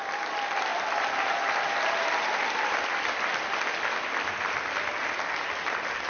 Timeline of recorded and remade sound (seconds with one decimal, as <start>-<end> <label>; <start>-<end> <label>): 0.0-6.1 recorded